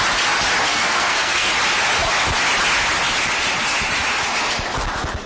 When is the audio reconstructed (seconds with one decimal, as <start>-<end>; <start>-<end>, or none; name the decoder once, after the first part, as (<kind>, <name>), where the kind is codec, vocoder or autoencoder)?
0.7-1.5 (codec, SNAC)